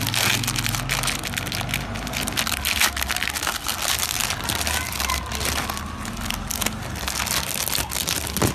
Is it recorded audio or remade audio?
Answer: recorded